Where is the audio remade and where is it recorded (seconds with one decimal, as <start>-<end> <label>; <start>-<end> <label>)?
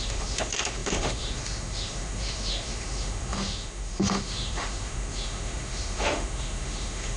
0.0-7.2 remade